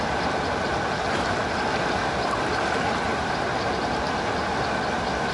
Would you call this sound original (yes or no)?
yes